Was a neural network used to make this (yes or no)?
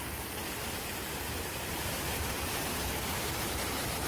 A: yes